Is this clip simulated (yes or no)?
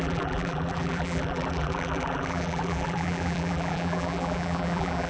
yes